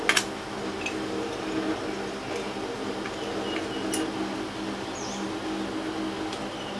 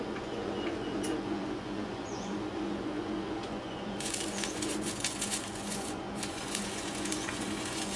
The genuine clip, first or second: first